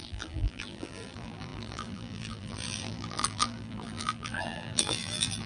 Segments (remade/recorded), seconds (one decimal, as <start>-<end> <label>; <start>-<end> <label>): 0.0-5.5 remade